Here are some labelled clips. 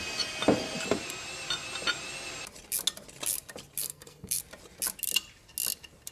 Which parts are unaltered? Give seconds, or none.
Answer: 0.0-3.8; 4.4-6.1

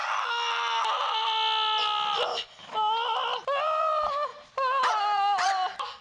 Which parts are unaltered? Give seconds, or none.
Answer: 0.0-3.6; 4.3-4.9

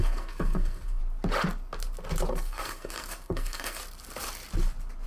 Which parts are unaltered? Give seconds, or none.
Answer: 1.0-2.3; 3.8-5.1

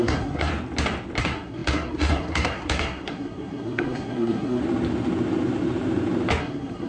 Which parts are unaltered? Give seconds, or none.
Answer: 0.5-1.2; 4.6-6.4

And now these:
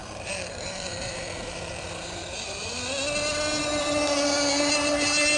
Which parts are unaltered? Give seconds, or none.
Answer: 2.9-5.4

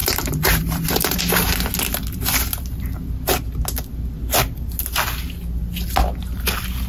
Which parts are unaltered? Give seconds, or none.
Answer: 1.2-6.9

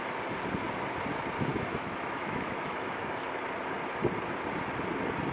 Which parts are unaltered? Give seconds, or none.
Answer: 0.0-1.5; 3.2-5.3